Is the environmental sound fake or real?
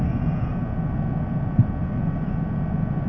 real